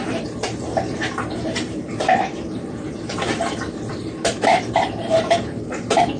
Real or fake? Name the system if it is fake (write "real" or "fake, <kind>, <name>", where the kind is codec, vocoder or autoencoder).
fake, vocoder, BigVGAN v2